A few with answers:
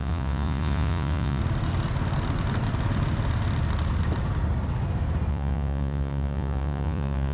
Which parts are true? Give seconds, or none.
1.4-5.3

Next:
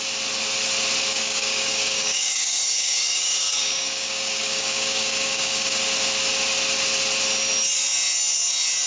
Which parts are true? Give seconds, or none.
0.0-1.1; 5.8-8.9

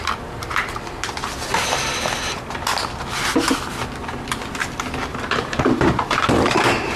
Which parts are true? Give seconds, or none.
0.0-5.1; 6.5-7.0

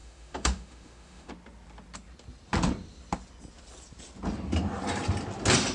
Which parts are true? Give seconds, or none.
1.3-5.7

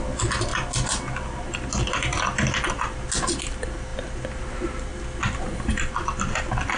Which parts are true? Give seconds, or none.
0.0-6.8

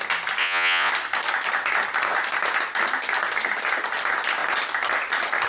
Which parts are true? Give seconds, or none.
0.0-0.4; 0.9-5.5

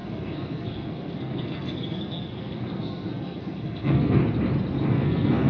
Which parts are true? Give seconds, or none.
4.2-4.9